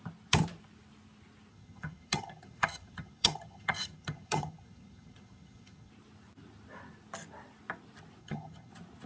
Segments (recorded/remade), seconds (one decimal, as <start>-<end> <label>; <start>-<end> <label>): 0.0-1.5 recorded; 1.5-5.9 remade; 5.9-8.2 recorded; 8.2-8.7 remade; 8.7-9.1 recorded